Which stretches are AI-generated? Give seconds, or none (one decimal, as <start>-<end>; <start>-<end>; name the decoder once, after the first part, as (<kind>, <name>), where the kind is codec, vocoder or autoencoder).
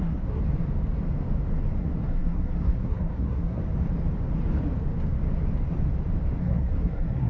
0.0-0.4 (codec, SNAC); 1.8-3.6; 6.4-7.3